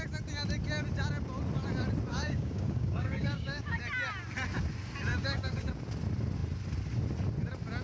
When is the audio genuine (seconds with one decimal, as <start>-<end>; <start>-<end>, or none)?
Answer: 0.0-2.1; 3.8-5.1; 5.7-7.8